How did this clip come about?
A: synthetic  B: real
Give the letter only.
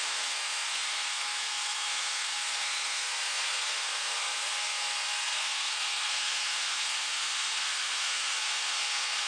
A